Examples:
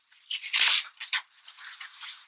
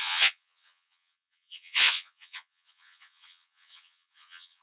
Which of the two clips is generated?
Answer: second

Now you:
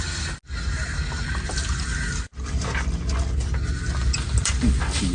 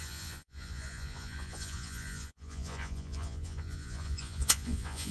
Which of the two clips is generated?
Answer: second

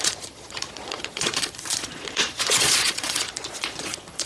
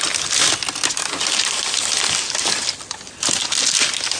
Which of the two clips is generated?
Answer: first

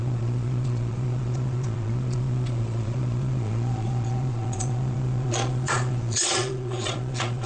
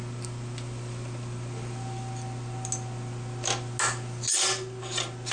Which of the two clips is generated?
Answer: first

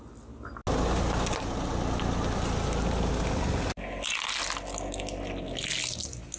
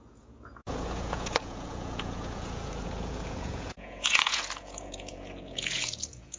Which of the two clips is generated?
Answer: second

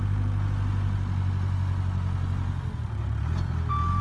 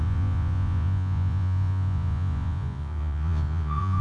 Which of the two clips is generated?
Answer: second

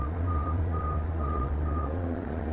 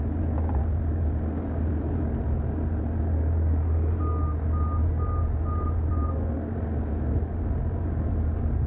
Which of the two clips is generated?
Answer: first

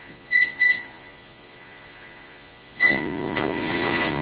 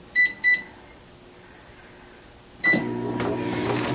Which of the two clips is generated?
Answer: first